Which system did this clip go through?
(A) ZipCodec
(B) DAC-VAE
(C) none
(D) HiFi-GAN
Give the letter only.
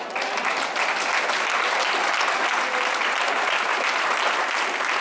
C